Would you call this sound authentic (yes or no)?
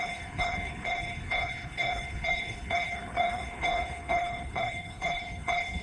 no